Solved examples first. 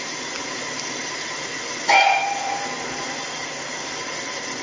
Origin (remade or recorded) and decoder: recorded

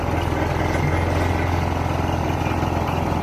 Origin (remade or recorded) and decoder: recorded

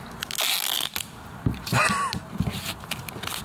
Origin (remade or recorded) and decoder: recorded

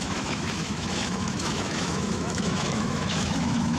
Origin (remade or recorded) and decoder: remade, autoencoder, DAC-VAE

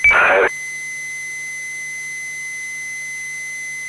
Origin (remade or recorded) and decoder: recorded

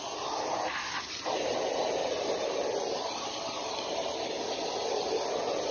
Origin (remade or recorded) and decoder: recorded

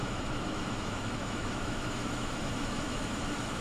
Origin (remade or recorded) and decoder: remade, autoencoder, DAC-VAE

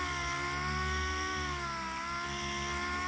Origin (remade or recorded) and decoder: recorded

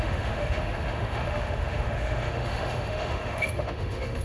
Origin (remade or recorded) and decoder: remade, autoencoder, DAC-VAE